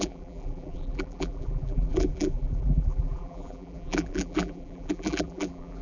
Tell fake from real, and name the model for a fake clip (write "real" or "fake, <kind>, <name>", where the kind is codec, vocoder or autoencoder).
fake, vocoder, BigVGAN v2